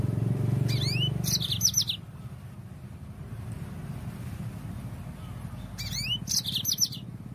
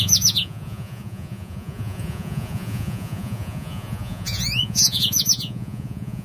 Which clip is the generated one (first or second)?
second